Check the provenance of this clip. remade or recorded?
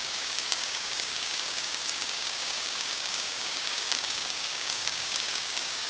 remade